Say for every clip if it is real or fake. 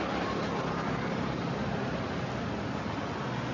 real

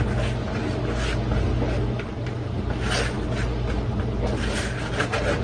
real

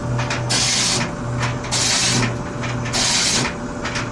real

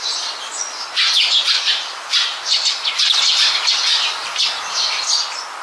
real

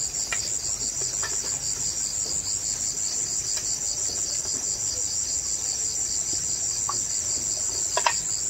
real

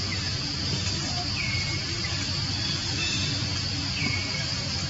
real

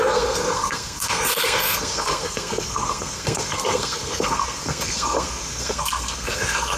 fake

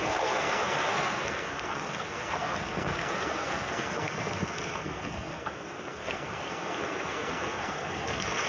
fake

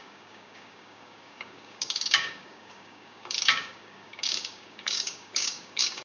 fake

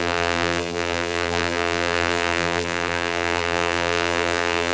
fake